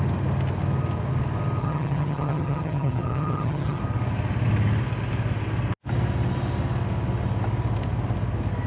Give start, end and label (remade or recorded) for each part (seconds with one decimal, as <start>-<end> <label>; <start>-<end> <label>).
0.0-1.6 recorded; 1.6-3.8 remade; 3.8-8.7 recorded